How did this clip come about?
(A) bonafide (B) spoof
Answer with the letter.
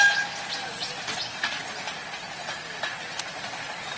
A